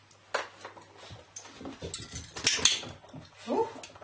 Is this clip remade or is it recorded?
recorded